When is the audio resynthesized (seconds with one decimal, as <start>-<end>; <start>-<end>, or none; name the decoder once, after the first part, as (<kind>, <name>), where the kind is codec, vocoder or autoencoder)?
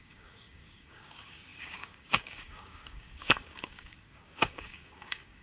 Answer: 0.0-5.4 (codec, DAC)